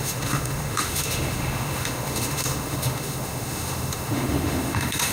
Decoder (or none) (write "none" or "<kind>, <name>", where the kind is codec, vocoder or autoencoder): autoencoder, DAC-VAE